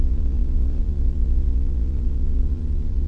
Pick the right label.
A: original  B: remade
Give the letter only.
B